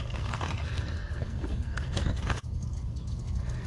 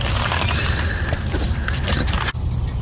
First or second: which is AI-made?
first